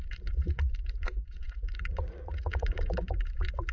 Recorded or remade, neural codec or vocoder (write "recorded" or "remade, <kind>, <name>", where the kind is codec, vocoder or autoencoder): remade, vocoder, Vocos